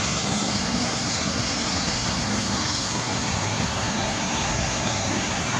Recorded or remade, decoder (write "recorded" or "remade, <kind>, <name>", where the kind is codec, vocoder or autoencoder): remade, codec, SNAC